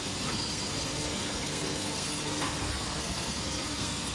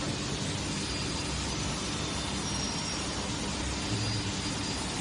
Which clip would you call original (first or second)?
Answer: second